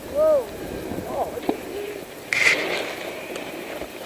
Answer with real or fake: real